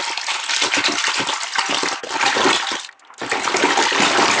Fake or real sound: real